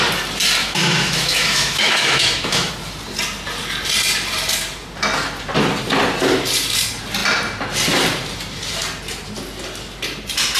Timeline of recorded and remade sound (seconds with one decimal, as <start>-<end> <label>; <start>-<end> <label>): 0.0-0.6 recorded; 0.6-2.7 remade; 2.7-10.6 recorded